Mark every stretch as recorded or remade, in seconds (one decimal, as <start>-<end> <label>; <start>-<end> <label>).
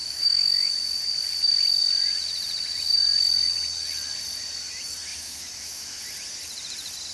0.0-0.7 remade; 0.7-5.1 recorded; 5.1-6.0 remade; 6.0-7.1 recorded